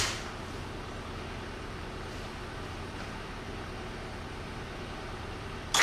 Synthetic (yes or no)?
no